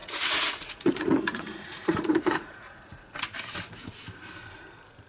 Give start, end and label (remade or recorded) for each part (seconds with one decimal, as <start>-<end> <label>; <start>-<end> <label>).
0.0-3.1 remade; 3.1-5.1 recorded